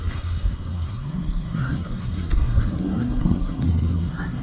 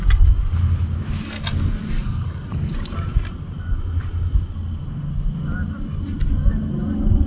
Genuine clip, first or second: second